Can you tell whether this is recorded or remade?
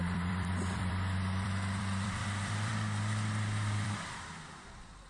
remade